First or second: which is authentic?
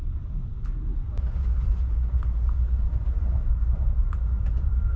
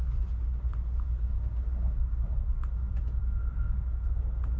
second